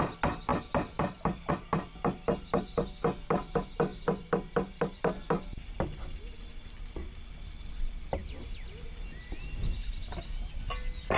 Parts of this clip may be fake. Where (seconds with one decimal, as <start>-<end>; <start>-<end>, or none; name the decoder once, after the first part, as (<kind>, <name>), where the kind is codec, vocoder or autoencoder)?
none